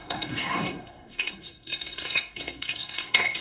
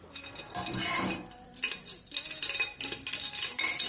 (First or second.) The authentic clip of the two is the second